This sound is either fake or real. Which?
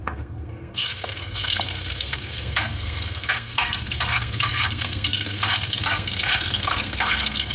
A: fake